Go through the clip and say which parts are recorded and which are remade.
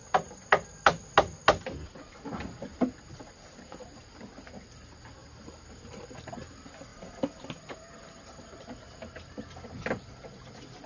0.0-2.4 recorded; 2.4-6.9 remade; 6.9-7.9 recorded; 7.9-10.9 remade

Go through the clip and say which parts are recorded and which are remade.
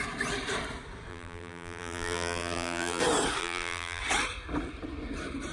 0.0-1.1 recorded; 1.1-3.0 remade; 3.0-3.4 recorded; 3.4-4.0 remade; 4.0-5.5 recorded